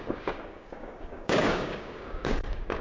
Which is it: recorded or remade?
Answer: remade